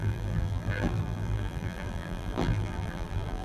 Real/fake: fake